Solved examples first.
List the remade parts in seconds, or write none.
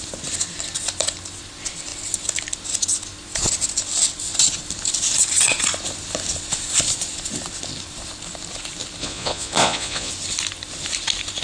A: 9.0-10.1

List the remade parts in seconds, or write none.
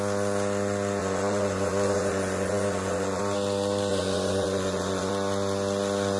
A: 1.0-3.2; 3.9-5.1